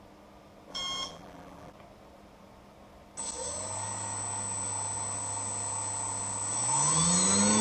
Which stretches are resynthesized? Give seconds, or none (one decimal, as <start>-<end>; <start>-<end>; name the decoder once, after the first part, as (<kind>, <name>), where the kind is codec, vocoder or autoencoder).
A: 0.7-1.7 (vocoder, BigVGAN v2)